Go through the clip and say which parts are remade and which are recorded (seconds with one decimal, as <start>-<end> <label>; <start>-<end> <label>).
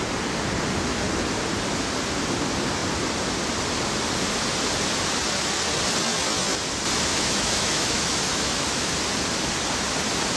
0.0-7.1 recorded; 7.1-8.9 remade; 8.9-10.4 recorded